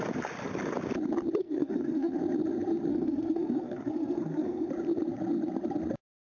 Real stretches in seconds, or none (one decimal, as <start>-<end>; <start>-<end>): 0.0-1.4; 2.2-2.9; 4.7-6.3